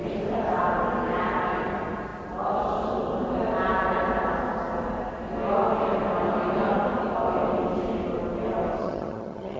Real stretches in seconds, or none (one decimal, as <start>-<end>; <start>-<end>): 0.0-8.8